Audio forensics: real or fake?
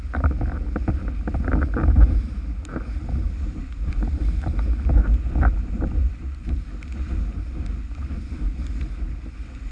real